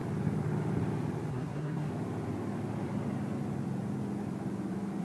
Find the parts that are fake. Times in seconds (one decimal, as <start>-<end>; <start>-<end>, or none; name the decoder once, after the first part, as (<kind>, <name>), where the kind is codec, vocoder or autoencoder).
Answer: 1.3-1.9 (codec, SNAC)